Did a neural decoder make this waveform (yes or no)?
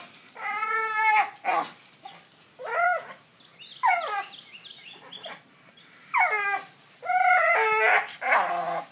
no